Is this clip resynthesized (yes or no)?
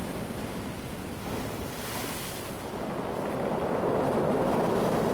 no